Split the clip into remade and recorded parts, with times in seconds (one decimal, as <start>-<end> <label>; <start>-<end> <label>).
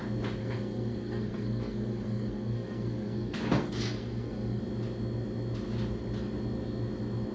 0.0-0.4 recorded; 0.4-4.6 remade; 4.6-7.3 recorded